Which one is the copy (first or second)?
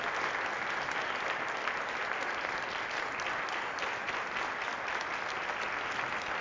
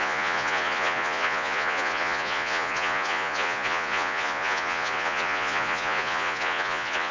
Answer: second